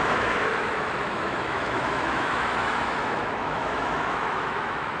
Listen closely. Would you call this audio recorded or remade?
remade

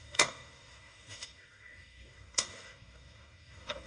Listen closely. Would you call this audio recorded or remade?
remade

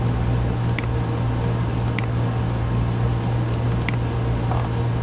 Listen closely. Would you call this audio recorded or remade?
remade